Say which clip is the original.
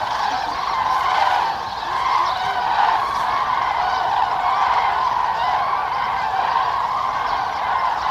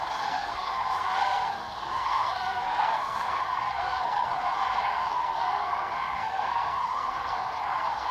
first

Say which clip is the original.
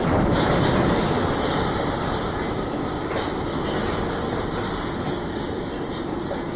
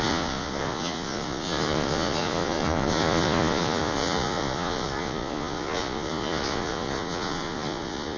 first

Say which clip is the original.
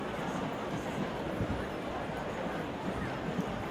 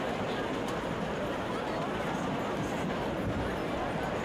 second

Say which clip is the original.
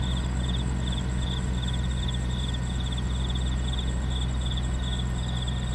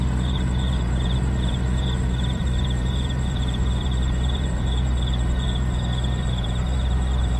first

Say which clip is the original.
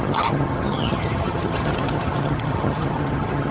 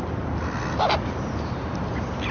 second